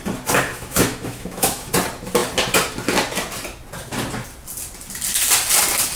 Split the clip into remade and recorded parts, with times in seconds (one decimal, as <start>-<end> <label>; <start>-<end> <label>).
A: 0.0-0.5 recorded; 0.5-1.7 remade; 1.7-6.0 recorded